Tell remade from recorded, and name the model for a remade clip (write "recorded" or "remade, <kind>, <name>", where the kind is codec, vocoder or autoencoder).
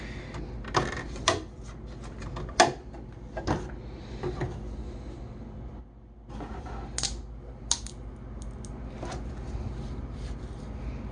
recorded